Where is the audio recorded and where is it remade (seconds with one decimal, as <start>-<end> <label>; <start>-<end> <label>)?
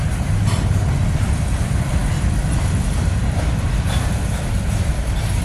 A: 0.0-2.0 recorded; 2.0-5.4 remade